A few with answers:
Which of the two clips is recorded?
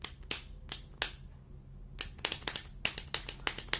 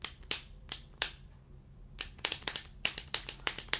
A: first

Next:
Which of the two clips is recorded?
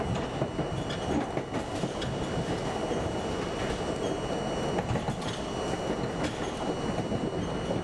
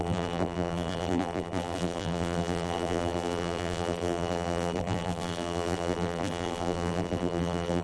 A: first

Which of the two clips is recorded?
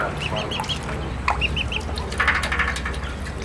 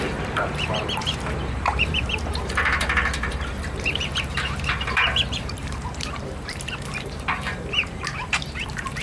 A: first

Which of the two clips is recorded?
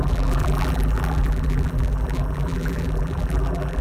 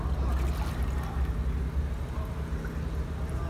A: second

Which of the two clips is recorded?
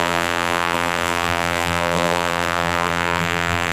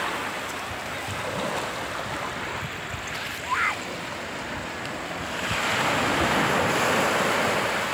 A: second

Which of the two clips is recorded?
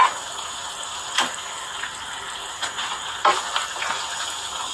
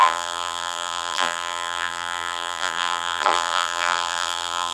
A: first